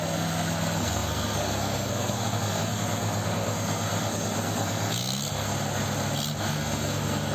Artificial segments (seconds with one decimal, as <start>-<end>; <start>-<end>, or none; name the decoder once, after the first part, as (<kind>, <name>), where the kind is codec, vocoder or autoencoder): 0.0-5.5 (codec, SNAC); 6.4-7.3